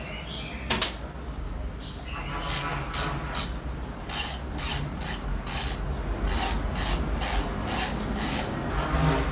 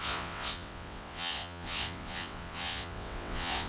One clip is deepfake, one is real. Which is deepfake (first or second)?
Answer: second